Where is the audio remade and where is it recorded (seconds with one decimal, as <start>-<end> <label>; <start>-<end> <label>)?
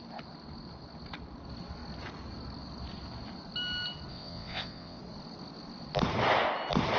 0.0-4.1 recorded; 4.1-5.0 remade; 5.0-7.0 recorded